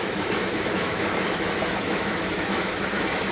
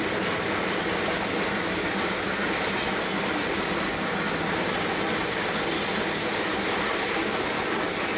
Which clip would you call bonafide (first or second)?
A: second